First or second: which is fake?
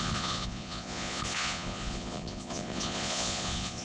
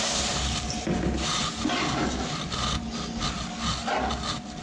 first